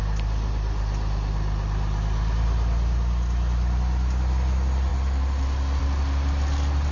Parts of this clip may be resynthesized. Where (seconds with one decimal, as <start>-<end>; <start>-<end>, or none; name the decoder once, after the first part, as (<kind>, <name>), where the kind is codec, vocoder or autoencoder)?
none